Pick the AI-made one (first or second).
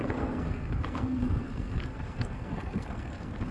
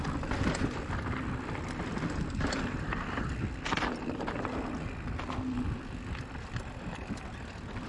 first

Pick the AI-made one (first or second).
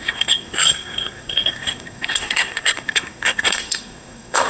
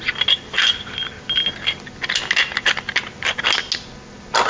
first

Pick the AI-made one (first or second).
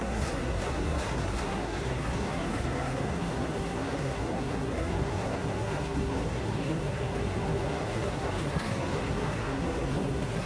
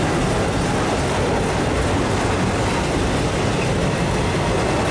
first